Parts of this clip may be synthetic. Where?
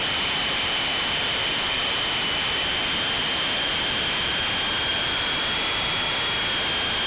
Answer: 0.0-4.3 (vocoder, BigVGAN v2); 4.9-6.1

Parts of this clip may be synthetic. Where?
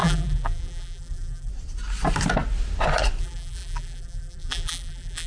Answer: 0.0-1.5 (vocoder, BigVGAN v2); 3.2-5.3